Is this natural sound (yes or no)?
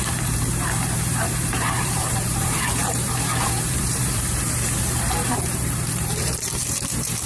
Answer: no